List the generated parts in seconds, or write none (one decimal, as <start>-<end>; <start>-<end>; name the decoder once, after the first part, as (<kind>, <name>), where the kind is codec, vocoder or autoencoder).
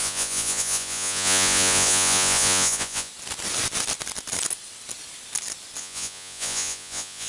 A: 0.0-3.1 (vocoder, Vocos); 5.8-7.3